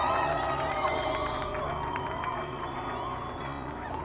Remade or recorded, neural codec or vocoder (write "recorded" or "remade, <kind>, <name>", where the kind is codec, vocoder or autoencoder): remade, vocoder, Vocos